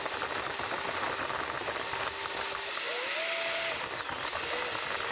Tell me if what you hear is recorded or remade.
recorded